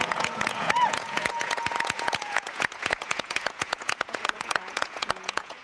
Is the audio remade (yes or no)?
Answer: yes